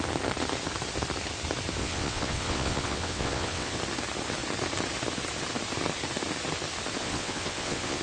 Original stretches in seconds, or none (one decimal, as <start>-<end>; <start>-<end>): 0.0-1.8; 3.8-7.0